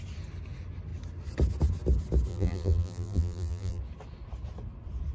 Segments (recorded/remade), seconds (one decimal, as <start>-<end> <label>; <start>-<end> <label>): 0.0-2.3 recorded; 2.3-3.8 remade; 3.8-5.1 recorded